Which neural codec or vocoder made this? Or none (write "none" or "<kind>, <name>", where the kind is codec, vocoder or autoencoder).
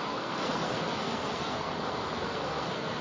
codec, SNAC